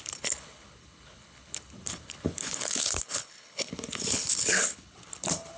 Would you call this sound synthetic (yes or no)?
yes